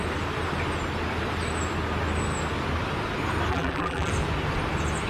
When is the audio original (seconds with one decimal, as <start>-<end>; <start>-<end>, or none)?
0.0-3.5; 4.1-5.1